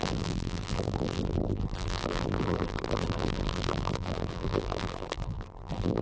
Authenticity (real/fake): fake